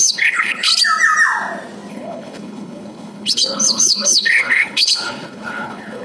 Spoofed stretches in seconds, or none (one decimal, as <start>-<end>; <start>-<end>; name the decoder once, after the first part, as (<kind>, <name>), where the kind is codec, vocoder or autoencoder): 0.0-0.7 (codec, HILCodec); 1.9-6.0